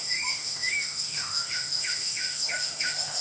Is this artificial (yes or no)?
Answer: yes